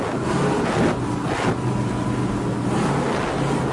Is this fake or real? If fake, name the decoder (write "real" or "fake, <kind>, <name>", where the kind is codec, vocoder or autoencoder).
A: real